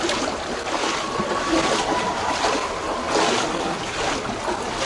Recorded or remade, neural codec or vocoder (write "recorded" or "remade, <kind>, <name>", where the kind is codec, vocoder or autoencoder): recorded